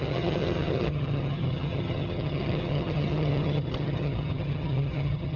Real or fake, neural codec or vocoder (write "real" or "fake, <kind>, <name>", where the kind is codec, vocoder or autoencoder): fake, vocoder, HiFi-GAN